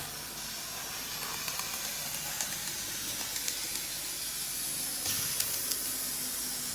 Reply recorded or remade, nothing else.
recorded